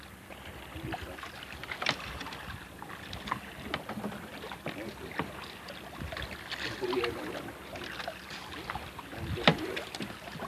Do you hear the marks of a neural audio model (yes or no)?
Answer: no